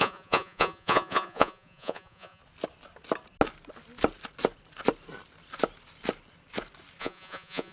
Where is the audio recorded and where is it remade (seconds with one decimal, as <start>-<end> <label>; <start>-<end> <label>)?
0.0-2.4 remade; 2.4-7.0 recorded; 7.0-7.7 remade